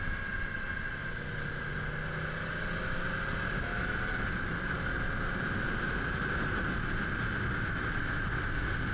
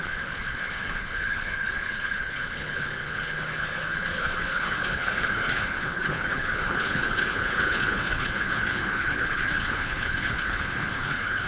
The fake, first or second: second